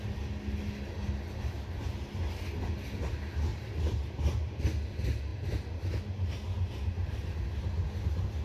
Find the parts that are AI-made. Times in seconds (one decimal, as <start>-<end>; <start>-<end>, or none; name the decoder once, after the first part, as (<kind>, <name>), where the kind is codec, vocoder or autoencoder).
3.5-4.6 (vocoder, BigVGAN v2); 5.3-6.0